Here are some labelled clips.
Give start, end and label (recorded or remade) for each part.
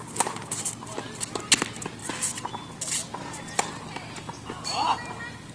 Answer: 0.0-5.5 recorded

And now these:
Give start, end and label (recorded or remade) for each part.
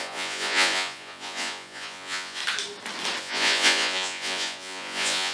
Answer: 0.0-2.4 remade; 2.4-3.2 recorded; 3.2-5.3 remade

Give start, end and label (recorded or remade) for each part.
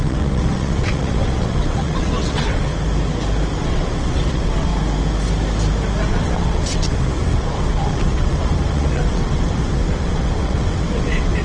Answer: 0.0-2.7 remade; 2.7-3.6 recorded; 3.6-4.7 remade; 4.7-6.1 recorded; 6.1-11.4 remade